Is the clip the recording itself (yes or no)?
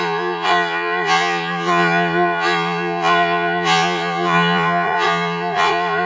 no